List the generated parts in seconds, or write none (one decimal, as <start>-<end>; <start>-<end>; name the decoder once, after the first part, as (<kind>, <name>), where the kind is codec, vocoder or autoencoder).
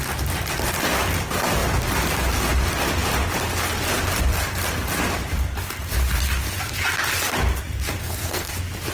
8.0-8.5 (codec, SNAC)